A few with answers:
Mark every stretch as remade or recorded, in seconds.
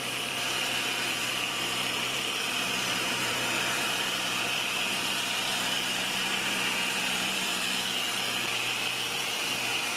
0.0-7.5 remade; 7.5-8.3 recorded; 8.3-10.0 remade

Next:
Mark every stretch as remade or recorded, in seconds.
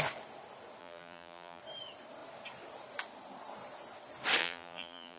0.0-0.8 recorded; 0.8-1.6 remade; 1.6-4.4 recorded; 4.4-5.2 remade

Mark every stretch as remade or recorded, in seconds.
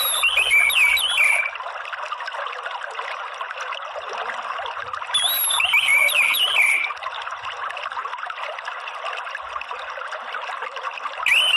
0.0-5.9 recorded; 5.9-6.9 remade; 6.9-8.0 recorded; 8.0-10.8 remade; 10.8-11.6 recorded